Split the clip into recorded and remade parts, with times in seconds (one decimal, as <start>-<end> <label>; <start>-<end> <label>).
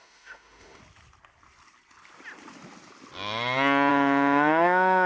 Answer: 0.0-0.8 remade; 0.8-3.9 recorded; 3.9-5.1 remade